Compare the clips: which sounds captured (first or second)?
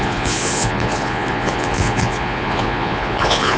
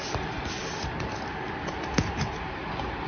second